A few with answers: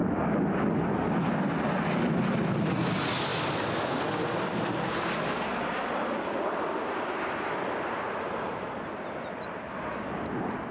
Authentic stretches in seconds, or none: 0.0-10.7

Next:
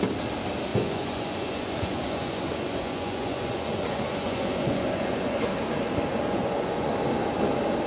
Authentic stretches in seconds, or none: 0.0-0.7; 5.4-6.1; 6.9-7.9